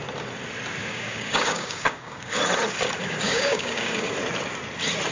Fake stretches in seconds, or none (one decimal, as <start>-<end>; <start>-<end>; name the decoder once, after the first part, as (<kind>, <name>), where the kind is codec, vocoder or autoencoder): 0.8-2.4 (codec, DAC); 3.0-4.1